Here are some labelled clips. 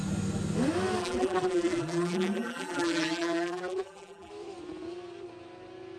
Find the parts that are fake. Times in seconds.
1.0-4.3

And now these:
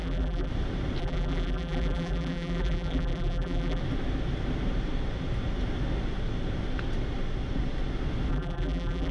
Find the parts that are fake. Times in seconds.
0.0-0.5; 1.0-3.8; 8.3-9.1

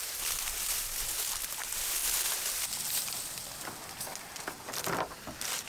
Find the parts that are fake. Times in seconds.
none

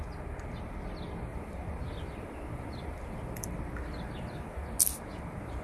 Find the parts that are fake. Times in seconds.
1.3-4.7

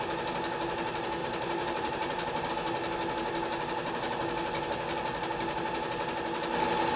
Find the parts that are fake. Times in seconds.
1.2-2.5

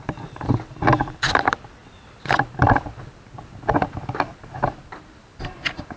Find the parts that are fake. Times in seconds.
0.0-1.8; 5.4-6.0

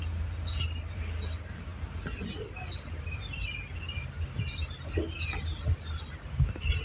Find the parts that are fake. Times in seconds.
none

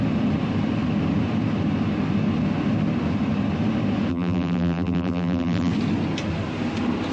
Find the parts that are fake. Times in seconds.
4.1-5.7